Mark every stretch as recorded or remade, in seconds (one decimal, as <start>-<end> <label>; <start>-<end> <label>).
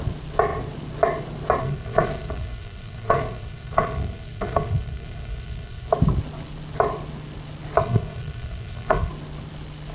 0.0-1.6 recorded; 1.6-5.9 remade; 5.9-7.8 recorded; 7.8-9.1 remade; 9.1-9.9 recorded